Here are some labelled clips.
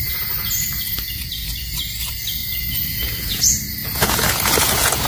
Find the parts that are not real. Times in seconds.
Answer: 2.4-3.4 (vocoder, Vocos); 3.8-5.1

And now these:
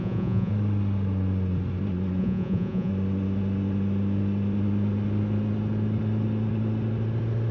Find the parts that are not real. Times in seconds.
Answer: 0.0-0.5 (vocoder, Vocos); 2.2-2.9

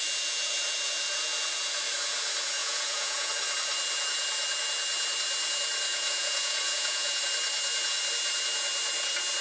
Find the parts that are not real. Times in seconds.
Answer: 2.6-3.3 (vocoder, Vocos); 5.9-7.2